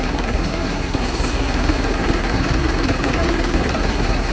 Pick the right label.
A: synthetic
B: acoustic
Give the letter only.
A